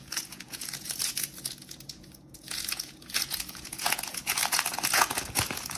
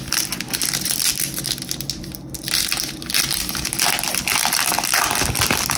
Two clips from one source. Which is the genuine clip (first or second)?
second